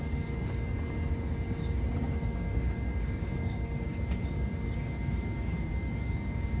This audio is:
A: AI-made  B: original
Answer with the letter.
A